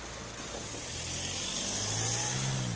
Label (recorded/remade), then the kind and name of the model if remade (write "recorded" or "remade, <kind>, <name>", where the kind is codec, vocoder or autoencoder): recorded